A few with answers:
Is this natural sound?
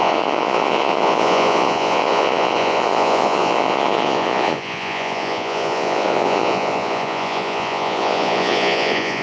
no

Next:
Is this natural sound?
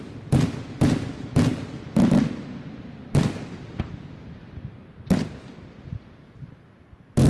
yes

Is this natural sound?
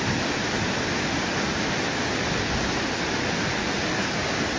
yes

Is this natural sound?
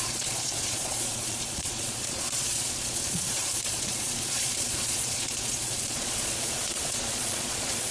no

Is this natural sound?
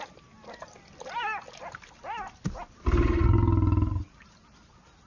yes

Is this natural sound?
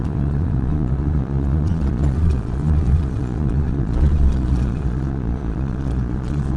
no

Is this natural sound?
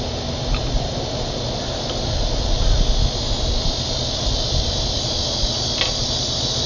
yes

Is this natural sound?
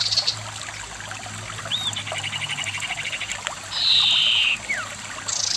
yes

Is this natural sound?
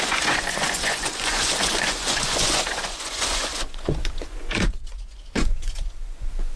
no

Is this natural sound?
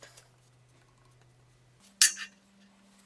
yes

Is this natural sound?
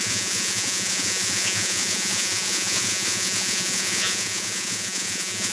no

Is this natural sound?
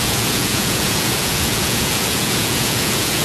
no